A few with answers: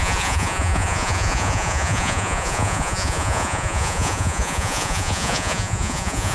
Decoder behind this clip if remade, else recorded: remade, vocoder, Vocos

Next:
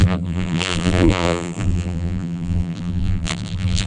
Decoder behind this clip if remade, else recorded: remade, vocoder, BigVGAN v2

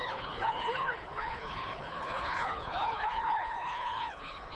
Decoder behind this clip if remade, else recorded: remade, codec, HILCodec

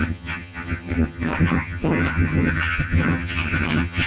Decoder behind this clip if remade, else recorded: remade, vocoder, HiFi-GAN